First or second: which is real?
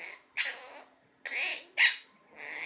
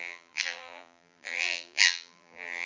first